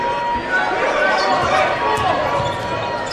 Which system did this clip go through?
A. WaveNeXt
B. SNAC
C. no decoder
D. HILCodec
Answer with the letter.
C